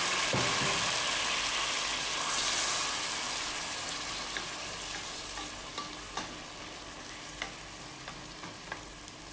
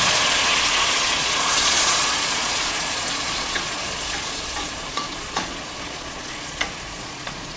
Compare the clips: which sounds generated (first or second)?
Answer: second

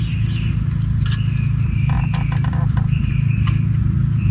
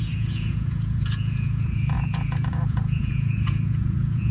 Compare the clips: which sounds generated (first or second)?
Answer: second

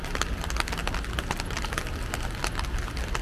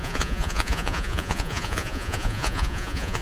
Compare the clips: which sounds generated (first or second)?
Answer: second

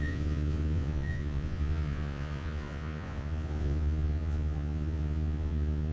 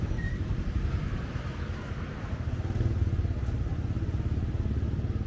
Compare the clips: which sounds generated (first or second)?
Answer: first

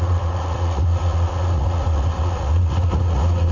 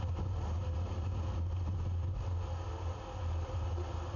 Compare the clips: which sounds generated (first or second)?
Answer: first